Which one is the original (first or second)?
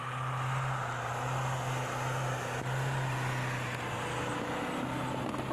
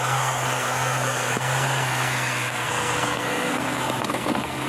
first